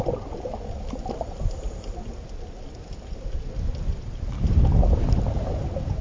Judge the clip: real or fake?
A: real